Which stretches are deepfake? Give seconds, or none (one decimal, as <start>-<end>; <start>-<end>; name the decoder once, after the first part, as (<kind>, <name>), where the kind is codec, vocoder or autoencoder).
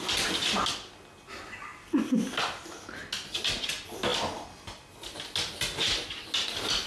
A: none